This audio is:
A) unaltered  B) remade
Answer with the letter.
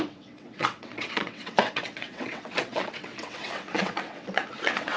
B